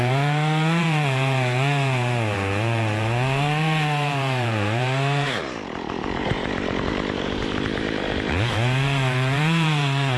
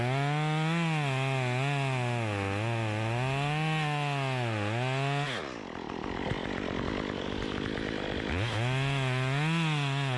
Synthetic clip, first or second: first